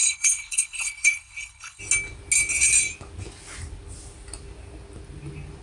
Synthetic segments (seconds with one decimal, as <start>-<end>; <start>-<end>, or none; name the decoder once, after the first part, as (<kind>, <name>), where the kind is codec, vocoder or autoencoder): 0.0-1.8 (codec, HILCodec)